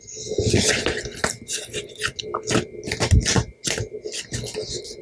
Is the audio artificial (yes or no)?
no